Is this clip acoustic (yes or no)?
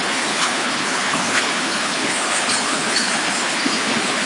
no